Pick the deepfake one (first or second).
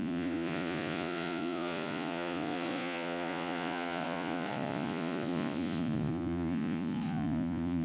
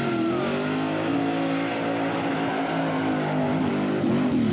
first